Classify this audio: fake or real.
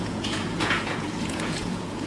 fake